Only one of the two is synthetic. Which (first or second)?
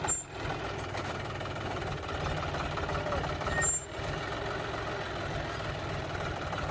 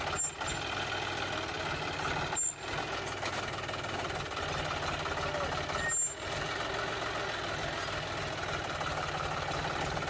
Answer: first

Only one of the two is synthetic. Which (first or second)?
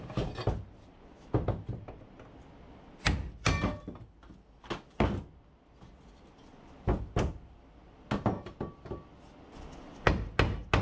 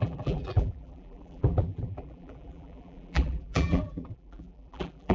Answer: second